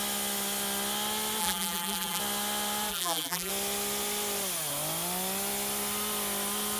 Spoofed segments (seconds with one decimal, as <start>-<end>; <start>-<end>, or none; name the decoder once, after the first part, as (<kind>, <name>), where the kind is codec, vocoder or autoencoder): 1.4-2.2 (vocoder, BigVGAN v2); 2.9-3.5